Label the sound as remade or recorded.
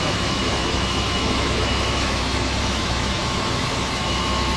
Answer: remade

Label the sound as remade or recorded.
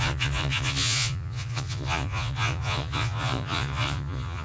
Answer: remade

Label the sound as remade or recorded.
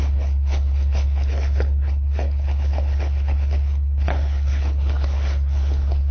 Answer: remade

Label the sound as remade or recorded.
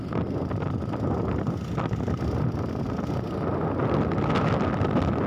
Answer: recorded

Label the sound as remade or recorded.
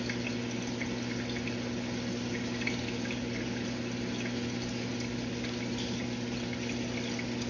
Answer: recorded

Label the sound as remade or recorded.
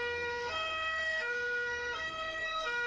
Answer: remade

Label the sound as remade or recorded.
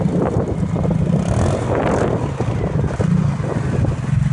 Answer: recorded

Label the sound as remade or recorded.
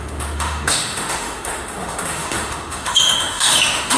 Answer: remade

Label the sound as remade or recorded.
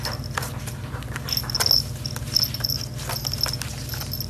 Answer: recorded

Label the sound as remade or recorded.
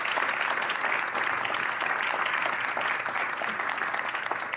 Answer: recorded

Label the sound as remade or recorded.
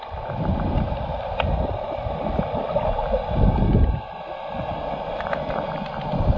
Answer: recorded